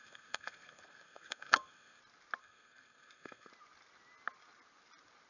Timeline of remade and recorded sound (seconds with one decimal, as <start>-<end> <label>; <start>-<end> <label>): 0.0-2.0 remade; 2.0-2.4 recorded; 2.4-3.5 remade; 3.5-5.3 recorded